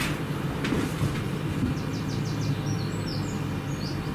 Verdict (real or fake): real